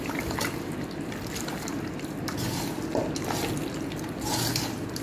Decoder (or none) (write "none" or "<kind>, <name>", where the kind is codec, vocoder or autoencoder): none